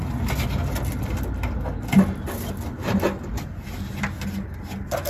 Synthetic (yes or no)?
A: no